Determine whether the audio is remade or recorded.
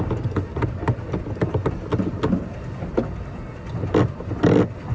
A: recorded